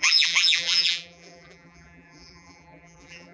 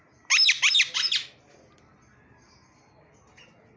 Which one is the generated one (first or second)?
first